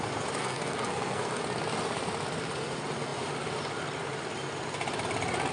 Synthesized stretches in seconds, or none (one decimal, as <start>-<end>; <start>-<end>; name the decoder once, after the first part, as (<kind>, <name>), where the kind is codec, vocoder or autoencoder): 0.4-1.4 (codec, SNAC)